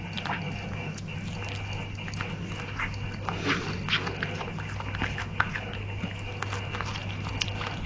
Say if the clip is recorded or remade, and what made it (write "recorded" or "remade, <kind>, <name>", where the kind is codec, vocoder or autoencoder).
recorded